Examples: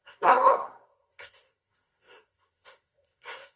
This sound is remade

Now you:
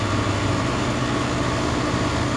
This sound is recorded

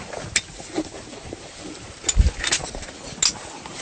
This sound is recorded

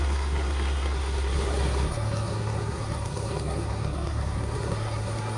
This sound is remade